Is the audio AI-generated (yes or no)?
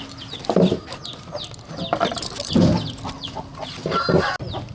no